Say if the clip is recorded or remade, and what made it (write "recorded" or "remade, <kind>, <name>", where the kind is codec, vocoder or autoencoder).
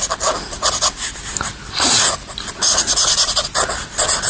recorded